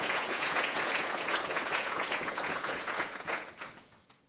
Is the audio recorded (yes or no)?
no